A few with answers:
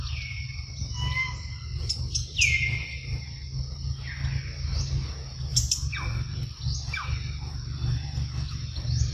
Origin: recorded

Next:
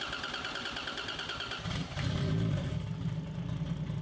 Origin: remade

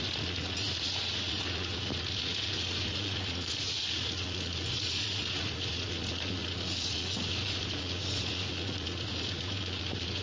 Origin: remade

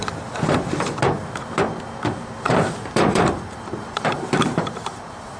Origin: remade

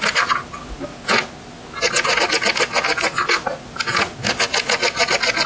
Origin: recorded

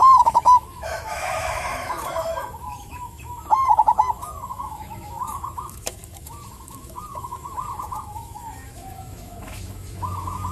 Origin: remade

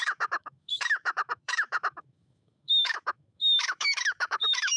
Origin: remade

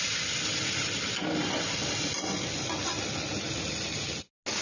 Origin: recorded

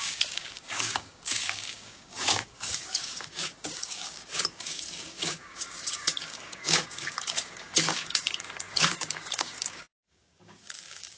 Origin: remade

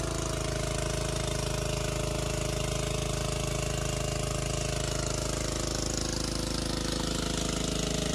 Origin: recorded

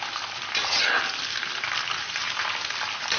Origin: recorded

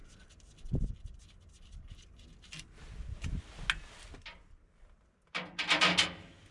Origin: recorded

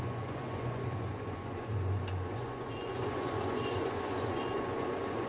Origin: remade